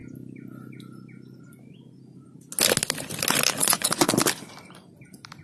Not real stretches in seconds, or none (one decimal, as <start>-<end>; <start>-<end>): 3.6-4.1